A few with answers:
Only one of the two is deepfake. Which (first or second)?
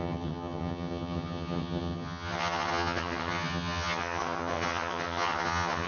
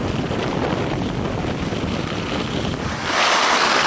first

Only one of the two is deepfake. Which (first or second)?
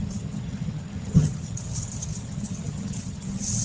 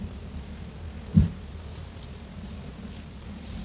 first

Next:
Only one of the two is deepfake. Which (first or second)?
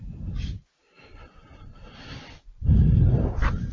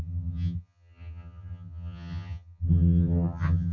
second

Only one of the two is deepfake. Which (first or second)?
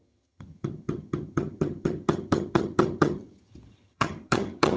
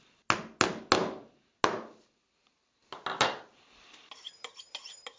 first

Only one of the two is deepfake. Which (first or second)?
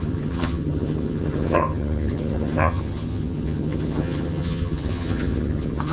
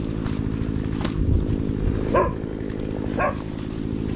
first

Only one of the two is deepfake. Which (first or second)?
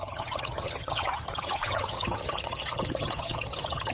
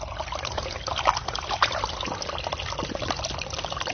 first